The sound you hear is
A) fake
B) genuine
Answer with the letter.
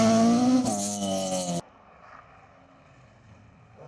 B